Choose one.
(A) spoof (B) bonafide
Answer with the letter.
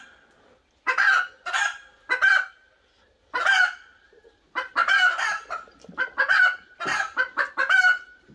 A